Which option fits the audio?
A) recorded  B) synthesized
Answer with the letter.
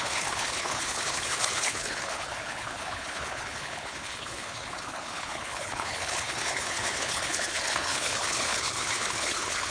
B